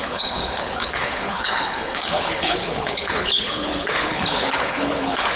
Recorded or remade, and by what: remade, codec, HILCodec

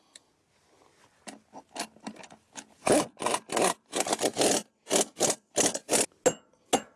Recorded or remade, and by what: recorded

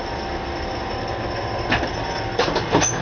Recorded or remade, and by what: recorded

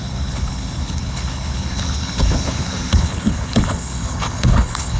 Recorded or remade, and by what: remade, codec, HILCodec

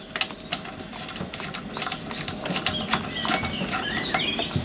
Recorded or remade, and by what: recorded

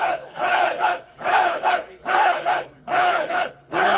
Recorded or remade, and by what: remade, codec, HILCodec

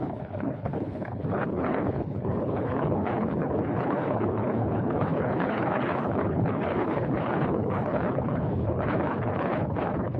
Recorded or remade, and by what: remade, codec, HILCodec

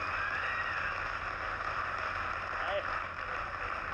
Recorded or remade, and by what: recorded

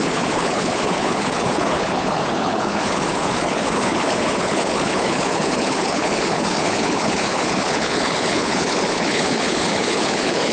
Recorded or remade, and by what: remade, codec, HILCodec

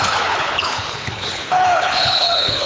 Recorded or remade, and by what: remade, codec, HILCodec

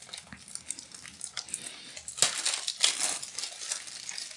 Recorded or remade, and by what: recorded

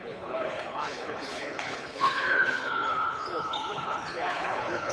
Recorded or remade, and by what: remade, codec, HILCodec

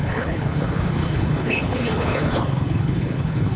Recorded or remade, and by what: remade, codec, HILCodec